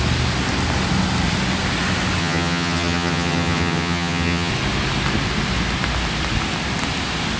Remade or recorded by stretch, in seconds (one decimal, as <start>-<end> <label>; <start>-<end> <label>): 0.0-2.2 recorded; 2.2-4.5 remade; 4.5-7.4 recorded